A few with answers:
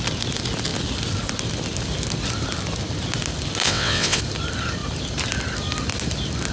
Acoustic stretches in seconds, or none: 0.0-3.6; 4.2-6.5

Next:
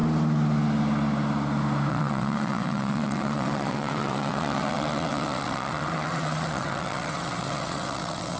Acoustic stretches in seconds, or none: 0.0-1.9

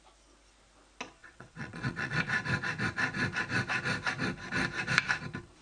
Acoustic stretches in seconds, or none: 0.0-1.2; 2.2-5.6

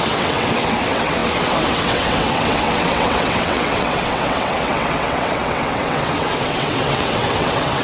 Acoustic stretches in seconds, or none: none

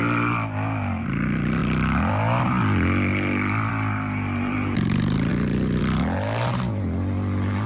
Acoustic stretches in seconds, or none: 0.0-7.7

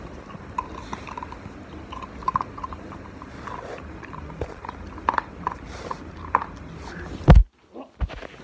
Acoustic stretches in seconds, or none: 0.0-8.4

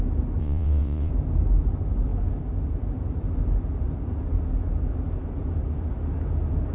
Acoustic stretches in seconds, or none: 0.0-0.4; 1.1-6.7